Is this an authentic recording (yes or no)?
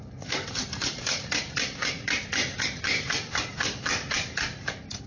no